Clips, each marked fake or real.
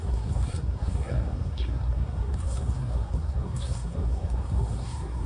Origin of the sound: fake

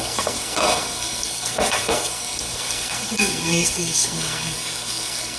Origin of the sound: fake